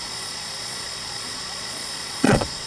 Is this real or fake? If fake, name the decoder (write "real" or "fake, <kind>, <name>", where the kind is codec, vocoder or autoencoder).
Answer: fake, vocoder, Vocos